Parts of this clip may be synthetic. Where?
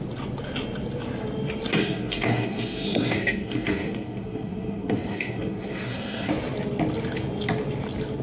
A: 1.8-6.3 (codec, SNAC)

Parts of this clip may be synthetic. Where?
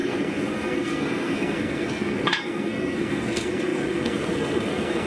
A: 0.0-5.1 (codec, SNAC)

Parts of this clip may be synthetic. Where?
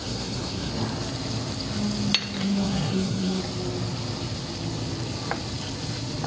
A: 0.0-0.7 (codec, SNAC); 2.4-3.4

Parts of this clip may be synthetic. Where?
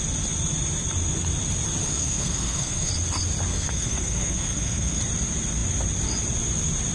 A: 1.8-2.9 (codec, SNAC); 3.5-5.0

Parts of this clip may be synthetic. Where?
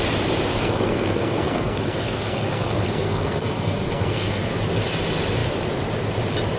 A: 0.5-4.5 (codec, SNAC)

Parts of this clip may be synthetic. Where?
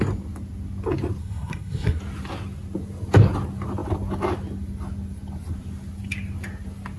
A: 1.2-2.0 (codec, SNAC)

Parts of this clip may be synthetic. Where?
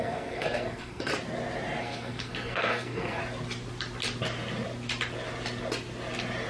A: 0.0-1.1 (codec, SNAC); 1.8-3.2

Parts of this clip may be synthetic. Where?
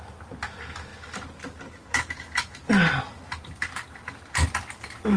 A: none